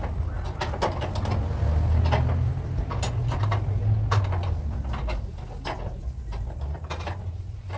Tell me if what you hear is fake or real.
real